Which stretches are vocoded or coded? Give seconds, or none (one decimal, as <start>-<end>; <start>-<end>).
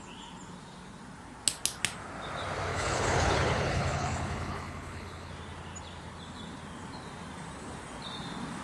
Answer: 2.7-5.3